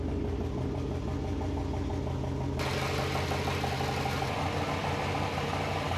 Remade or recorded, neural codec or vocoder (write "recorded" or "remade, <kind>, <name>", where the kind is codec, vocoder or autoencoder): recorded